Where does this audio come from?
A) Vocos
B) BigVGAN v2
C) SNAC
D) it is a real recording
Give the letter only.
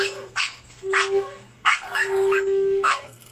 C